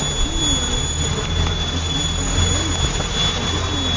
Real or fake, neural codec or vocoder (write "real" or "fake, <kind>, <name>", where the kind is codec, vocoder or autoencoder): real